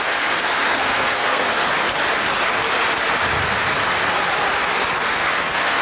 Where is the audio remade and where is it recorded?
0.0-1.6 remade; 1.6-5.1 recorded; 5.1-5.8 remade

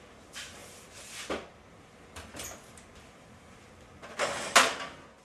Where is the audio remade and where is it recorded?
0.0-0.6 recorded; 0.6-3.7 remade; 3.7-5.2 recorded